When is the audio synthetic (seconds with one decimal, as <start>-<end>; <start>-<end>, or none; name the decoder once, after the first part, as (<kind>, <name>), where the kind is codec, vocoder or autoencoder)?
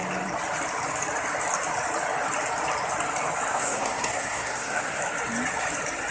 3.5-5.0 (codec, SNAC)